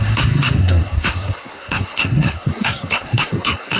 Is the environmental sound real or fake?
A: fake